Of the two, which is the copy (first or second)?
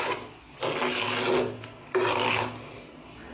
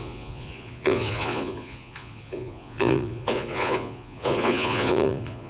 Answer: second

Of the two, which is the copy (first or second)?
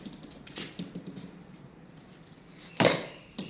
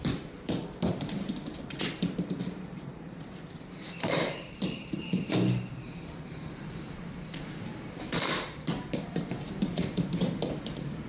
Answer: second